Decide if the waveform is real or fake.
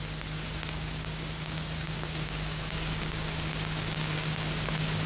fake